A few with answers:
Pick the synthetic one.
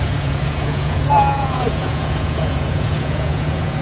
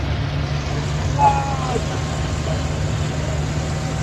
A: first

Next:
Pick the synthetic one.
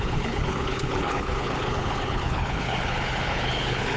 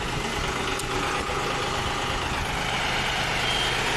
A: first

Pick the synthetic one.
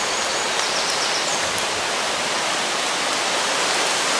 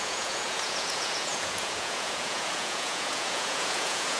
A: second